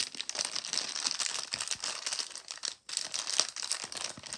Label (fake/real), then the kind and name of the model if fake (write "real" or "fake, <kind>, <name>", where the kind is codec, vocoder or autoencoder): real